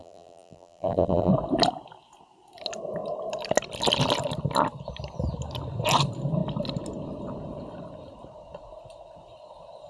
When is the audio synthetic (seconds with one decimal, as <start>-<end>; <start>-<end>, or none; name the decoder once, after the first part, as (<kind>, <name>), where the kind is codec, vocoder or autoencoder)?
0.0-1.3 (vocoder, BigVGAN v2)